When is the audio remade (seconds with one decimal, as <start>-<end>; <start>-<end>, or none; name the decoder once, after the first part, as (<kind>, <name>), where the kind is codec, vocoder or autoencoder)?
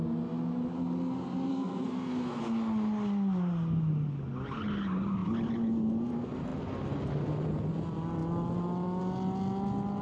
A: 1.5-2.4 (codec, SNAC)